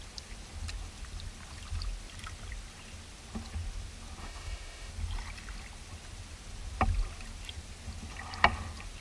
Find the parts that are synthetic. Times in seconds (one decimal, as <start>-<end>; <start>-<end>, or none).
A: 4.2-4.9